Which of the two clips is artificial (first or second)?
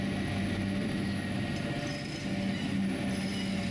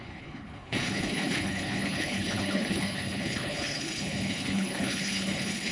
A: second